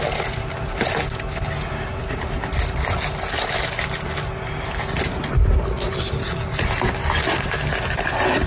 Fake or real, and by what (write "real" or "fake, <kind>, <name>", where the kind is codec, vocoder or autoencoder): real